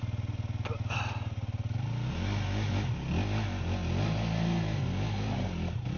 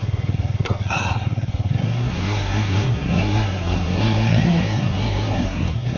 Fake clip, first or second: second